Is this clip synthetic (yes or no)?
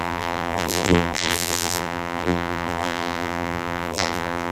yes